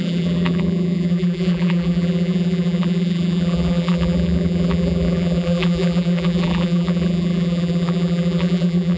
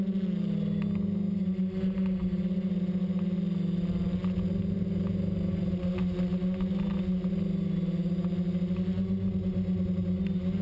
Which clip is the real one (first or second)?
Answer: second